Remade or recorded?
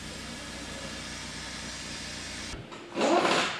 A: recorded